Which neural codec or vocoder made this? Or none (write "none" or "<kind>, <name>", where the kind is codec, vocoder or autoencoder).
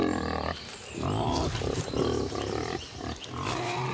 none